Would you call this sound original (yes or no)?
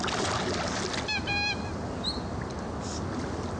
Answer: yes